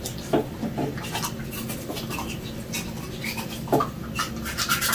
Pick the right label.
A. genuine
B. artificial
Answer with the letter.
A